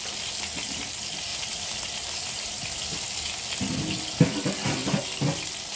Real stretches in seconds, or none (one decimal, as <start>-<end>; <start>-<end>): 0.0-5.8